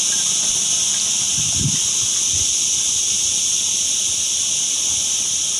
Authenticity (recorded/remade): recorded